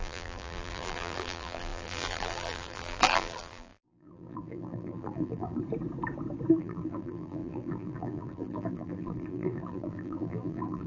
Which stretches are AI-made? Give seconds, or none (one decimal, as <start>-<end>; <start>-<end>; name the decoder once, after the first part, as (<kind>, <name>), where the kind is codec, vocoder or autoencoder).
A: 0.0-5.6 (vocoder, BigVGAN v2); 6.5-10.9